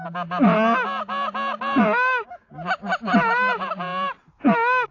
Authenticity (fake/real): real